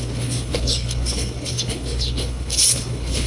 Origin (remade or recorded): remade